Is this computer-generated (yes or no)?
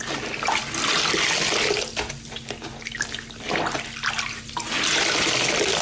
no